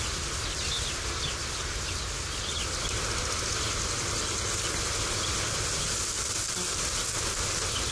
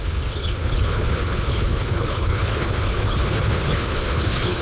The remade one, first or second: second